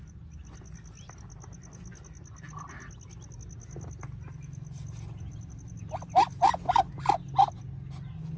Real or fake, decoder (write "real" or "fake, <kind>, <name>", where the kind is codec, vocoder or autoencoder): real